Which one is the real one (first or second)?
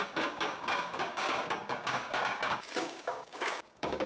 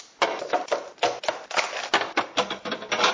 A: second